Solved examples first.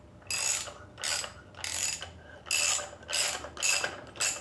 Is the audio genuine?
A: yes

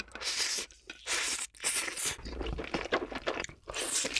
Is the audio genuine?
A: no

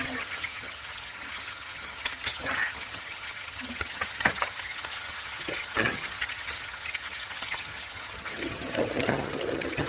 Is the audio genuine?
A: no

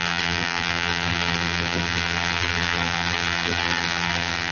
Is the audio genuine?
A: no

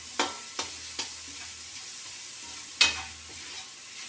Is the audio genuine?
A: yes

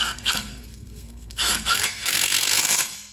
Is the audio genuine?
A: no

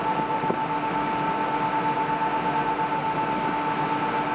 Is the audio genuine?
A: yes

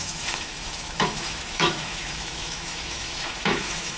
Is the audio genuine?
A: no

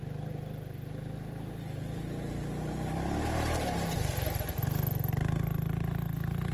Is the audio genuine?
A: yes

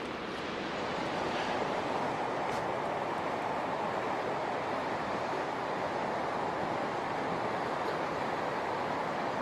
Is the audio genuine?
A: yes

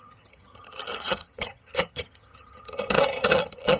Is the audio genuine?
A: no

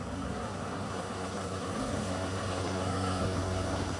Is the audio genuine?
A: no